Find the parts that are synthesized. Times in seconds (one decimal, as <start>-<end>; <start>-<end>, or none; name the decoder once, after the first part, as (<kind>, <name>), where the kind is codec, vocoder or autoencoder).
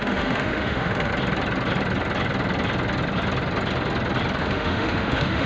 0.0-1.1 (autoencoder, DAC-VAE); 4.4-5.5